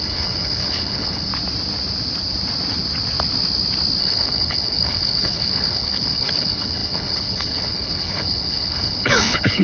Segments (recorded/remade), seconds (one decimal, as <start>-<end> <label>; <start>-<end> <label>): 0.0-1.3 remade; 1.3-4.0 recorded; 4.0-9.6 remade

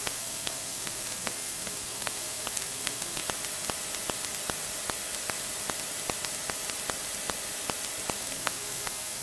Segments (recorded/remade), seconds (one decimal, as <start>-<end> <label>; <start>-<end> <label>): 0.0-3.2 remade; 3.2-8.2 recorded; 8.2-9.2 remade

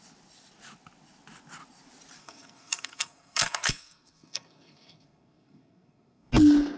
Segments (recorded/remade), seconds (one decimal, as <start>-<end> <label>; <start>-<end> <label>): 0.0-2.2 recorded; 2.2-6.3 remade; 6.3-6.8 recorded